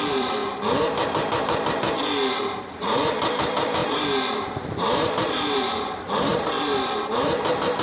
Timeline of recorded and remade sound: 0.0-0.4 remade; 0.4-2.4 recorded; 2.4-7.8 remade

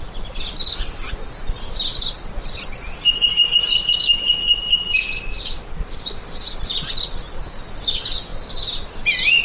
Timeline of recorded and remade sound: 0.0-0.6 recorded; 0.6-4.3 remade; 4.3-5.8 recorded; 5.8-6.9 remade; 6.9-9.4 recorded

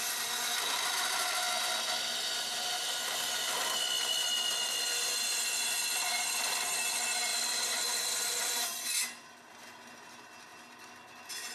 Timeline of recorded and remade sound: 0.0-7.3 recorded; 7.3-8.9 remade; 8.9-10.5 recorded; 10.5-11.5 remade

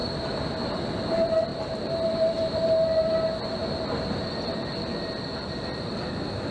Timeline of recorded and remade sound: 0.0-1.5 recorded; 1.5-2.8 remade; 2.8-6.5 recorded

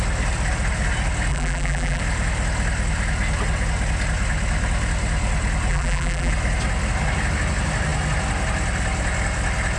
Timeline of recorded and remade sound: 0.0-1.3 recorded; 1.3-2.0 remade; 2.0-5.7 recorded; 5.7-6.3 remade; 6.3-9.8 recorded